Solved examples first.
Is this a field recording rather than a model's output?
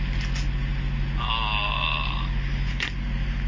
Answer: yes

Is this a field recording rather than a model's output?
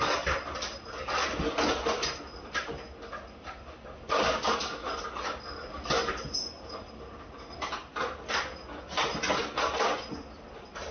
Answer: yes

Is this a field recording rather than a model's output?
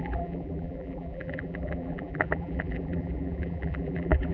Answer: no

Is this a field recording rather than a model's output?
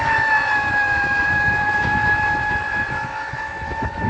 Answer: no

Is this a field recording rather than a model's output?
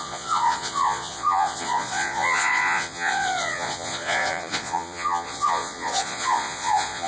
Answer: no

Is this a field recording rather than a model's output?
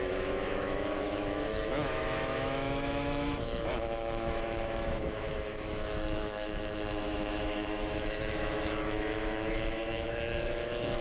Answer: no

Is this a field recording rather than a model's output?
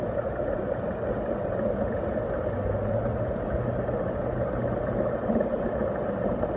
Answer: yes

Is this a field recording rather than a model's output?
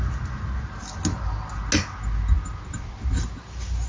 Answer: yes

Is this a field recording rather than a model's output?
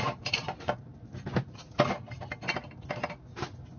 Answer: yes